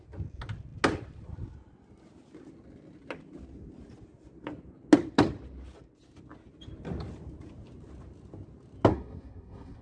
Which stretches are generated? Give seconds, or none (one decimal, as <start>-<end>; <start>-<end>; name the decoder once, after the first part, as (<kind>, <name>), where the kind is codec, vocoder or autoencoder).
8.9-9.8 (codec, SNAC)

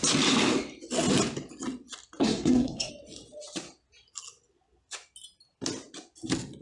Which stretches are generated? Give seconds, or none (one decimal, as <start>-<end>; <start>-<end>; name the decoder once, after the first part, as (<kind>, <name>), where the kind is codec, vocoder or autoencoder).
2.2-2.9 (codec, SNAC)

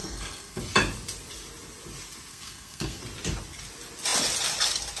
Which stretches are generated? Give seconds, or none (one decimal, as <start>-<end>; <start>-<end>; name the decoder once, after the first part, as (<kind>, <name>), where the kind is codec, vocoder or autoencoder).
0.0-0.6 (codec, SNAC); 2.3-3.0

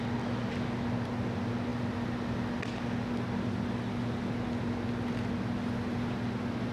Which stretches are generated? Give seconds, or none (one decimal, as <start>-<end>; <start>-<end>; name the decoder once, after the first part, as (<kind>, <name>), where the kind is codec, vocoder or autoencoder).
none

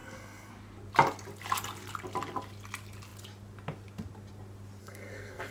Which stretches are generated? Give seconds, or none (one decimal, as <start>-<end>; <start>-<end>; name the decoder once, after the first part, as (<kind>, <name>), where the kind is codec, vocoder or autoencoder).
0.0-0.5 (codec, SNAC); 4.8-5.5

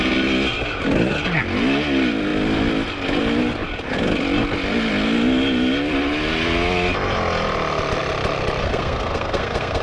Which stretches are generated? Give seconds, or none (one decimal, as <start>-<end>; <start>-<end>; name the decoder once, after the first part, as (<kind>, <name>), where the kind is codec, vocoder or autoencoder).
8.6-9.8 (codec, SNAC)